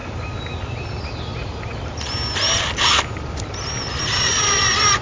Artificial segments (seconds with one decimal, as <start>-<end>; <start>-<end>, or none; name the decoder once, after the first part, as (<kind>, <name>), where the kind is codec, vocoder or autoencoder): none

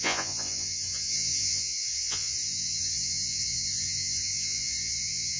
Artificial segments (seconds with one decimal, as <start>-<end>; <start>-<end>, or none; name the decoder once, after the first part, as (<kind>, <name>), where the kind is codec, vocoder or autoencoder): 0.0-5.4 (vocoder, Vocos)

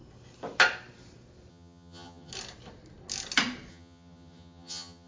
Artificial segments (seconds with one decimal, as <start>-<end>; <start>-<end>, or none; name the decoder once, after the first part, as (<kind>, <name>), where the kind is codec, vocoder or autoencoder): 1.5-2.3 (vocoder, HiFi-GAN); 3.7-5.1

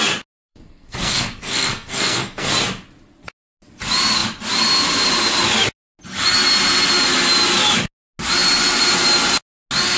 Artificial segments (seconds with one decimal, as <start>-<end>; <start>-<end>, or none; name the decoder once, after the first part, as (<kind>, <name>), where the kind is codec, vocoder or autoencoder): 0.5-2.5 (codec, SNAC)

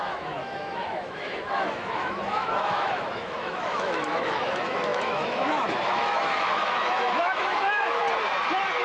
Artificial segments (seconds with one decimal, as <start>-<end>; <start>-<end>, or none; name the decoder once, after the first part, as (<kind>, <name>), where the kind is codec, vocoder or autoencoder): 0.0-8.0 (autoencoder, DAC-VAE)